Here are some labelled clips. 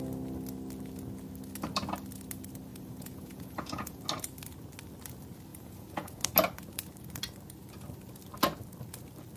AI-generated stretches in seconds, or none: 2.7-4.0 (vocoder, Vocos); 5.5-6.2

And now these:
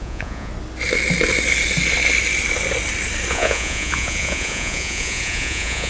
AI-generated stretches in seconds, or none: 0.0-0.5 (vocoder, Vocos); 3.3-5.9

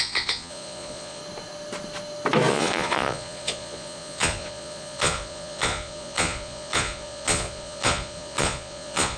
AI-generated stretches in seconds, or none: 0.0-1.2 (vocoder, Vocos); 2.5-9.2

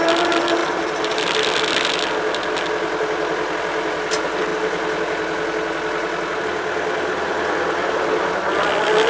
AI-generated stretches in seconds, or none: none

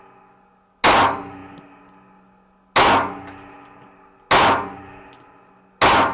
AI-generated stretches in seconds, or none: none

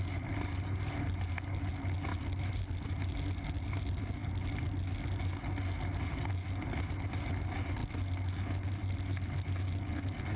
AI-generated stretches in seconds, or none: none

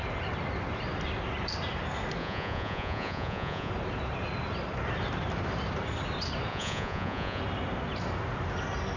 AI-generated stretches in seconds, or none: 2.2-3.7 (vocoder, Vocos); 6.5-7.4